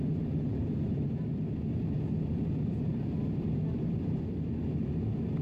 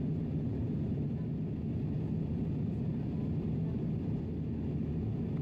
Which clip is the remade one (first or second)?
first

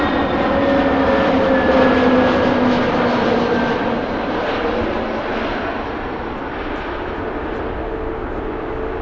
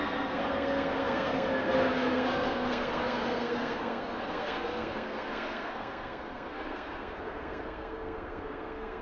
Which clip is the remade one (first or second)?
second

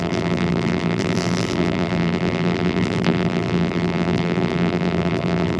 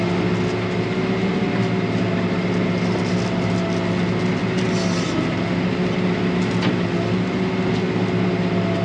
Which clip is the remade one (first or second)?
first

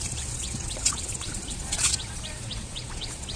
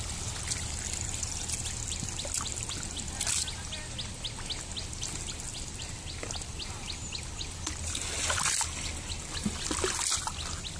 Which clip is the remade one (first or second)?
first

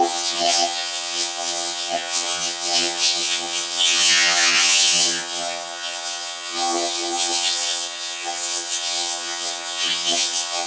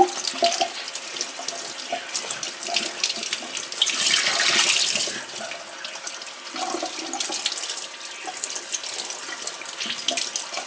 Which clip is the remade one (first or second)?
first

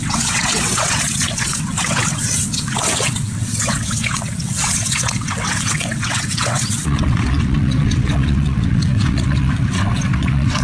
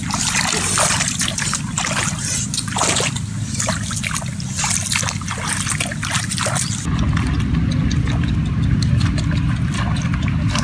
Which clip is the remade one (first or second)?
first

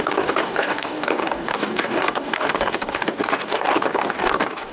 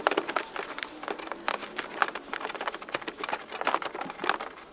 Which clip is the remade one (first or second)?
first